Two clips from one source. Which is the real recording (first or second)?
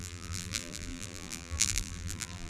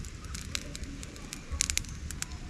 second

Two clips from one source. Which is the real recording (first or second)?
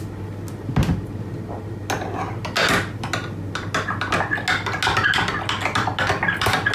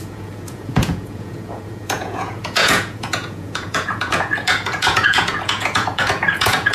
first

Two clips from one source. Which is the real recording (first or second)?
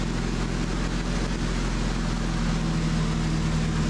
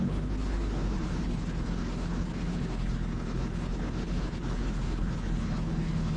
first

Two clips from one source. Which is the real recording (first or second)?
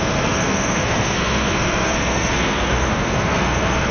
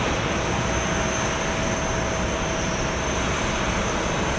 second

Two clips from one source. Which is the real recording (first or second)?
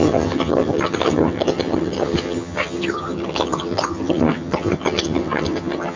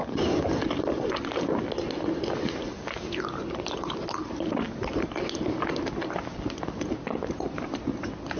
second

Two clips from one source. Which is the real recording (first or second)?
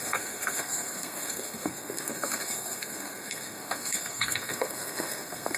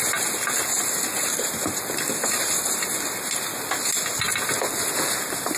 second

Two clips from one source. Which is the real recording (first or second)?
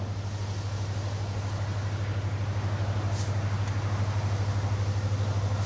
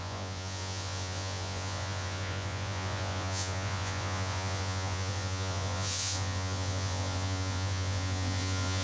first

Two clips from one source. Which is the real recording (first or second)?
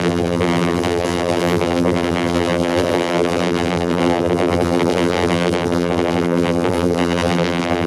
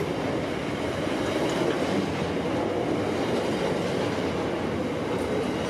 second